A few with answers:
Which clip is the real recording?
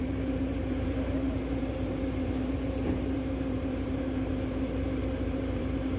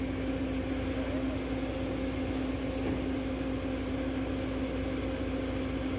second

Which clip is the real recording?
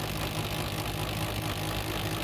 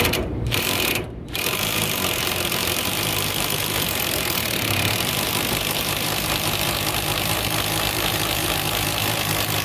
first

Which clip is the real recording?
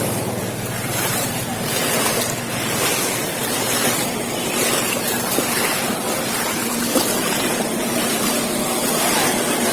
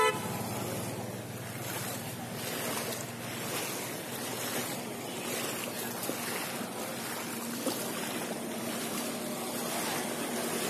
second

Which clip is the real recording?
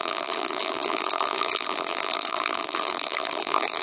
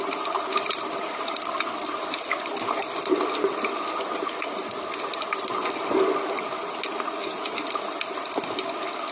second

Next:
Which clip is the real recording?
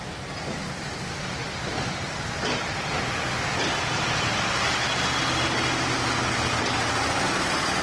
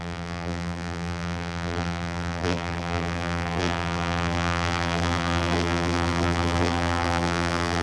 first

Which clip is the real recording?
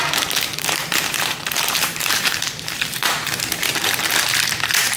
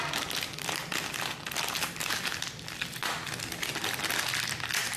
second